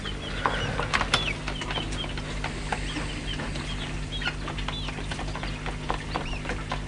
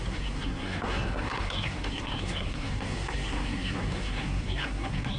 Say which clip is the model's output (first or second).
second